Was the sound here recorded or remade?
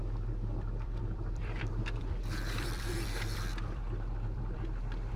remade